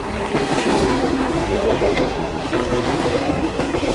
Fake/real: fake